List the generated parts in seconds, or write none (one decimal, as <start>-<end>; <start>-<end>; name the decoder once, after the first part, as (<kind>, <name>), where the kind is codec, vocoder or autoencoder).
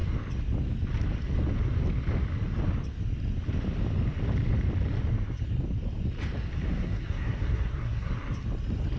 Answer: 6.7-8.1 (codec, SNAC)